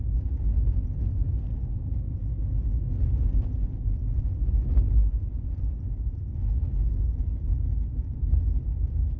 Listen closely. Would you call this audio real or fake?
real